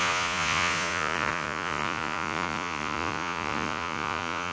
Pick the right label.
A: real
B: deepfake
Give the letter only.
B